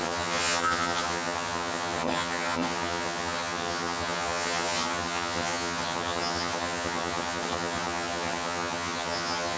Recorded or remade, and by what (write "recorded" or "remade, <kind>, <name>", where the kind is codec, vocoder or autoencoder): remade, vocoder, HiFi-GAN